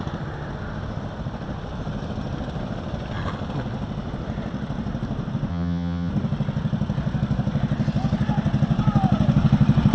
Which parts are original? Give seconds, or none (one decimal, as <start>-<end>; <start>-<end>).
0.0-5.5; 6.1-9.9